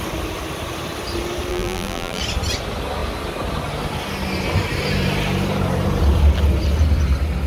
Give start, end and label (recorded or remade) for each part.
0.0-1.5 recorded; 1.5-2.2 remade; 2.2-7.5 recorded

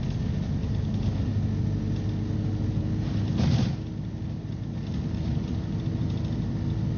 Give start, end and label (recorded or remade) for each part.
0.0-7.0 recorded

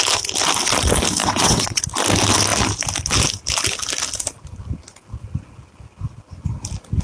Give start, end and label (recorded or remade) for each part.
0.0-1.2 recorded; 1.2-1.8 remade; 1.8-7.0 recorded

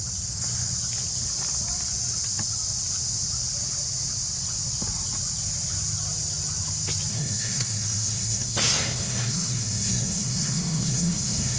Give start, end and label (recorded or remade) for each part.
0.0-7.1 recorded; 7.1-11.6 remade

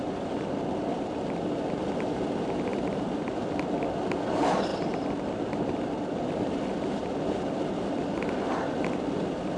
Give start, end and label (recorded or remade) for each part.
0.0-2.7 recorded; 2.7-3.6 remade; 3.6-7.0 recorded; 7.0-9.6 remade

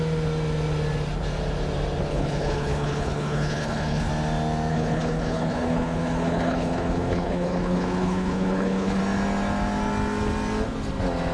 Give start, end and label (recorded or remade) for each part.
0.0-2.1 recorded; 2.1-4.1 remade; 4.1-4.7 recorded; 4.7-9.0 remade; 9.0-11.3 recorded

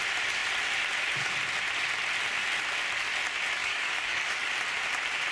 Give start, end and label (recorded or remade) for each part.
0.0-3.6 recorded; 3.6-4.5 remade; 4.5-5.3 recorded